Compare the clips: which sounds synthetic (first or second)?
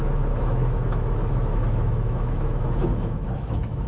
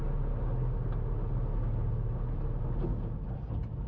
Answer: first